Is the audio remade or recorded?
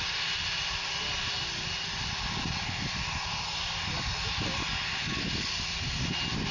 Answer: recorded